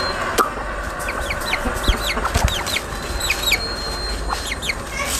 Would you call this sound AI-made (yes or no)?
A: no